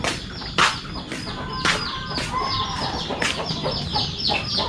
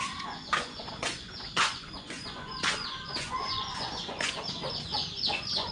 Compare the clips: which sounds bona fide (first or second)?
first